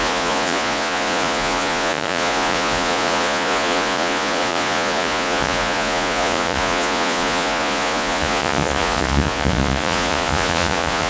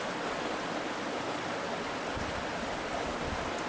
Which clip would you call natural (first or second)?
second